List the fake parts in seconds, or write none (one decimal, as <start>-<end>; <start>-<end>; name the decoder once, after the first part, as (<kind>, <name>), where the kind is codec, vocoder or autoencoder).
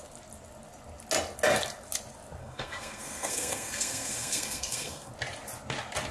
2.4-5.1 (codec, SNAC)